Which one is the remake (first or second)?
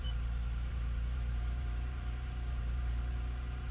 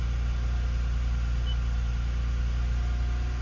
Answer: first